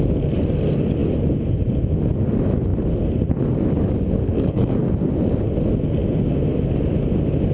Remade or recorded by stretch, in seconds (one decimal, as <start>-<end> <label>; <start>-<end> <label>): 0.0-4.2 recorded; 4.2-4.9 remade; 4.9-7.5 recorded